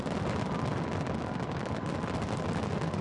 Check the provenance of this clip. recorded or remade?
recorded